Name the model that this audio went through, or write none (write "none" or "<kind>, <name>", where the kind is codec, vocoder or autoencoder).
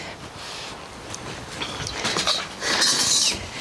none